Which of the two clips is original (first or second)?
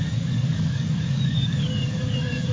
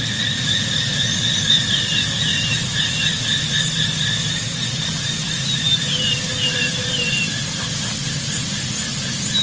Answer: second